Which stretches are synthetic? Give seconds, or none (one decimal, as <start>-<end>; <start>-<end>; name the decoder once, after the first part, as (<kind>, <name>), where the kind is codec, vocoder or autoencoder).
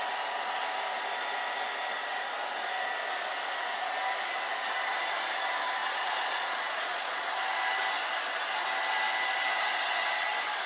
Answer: 5.8-7.3 (vocoder, Vocos)